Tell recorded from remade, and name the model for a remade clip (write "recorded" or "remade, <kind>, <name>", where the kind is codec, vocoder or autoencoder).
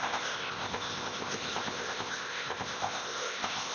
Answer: remade, codec, ZipCodec